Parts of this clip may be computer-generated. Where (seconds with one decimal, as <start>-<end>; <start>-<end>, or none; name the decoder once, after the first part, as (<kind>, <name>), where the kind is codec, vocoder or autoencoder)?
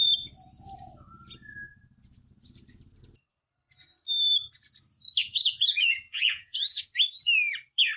5.2-6.8 (vocoder, Vocos)